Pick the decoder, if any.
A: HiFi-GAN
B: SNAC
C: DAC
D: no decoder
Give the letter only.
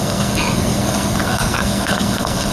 B